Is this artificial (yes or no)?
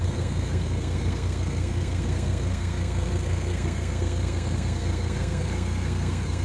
yes